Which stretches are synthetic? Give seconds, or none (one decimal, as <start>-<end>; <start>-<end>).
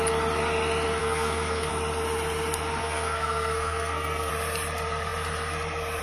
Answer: 1.0-1.7; 2.8-4.3